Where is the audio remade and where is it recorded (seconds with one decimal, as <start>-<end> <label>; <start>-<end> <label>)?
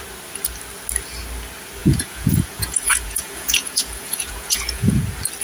0.0-1.8 recorded; 1.8-5.0 remade; 5.0-5.4 recorded